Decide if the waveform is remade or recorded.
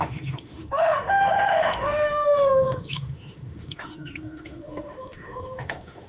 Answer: remade